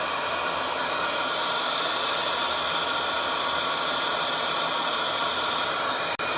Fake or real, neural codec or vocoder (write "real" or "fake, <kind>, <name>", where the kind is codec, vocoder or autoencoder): real